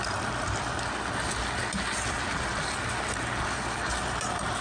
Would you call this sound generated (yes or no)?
no